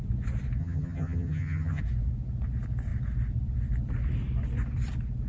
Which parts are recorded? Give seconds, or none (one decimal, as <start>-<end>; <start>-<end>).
0.0-0.6; 1.8-5.3